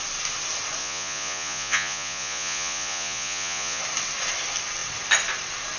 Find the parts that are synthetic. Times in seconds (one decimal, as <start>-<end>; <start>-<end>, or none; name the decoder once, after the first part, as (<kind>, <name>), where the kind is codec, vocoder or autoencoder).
0.8-3.8 (vocoder, Vocos)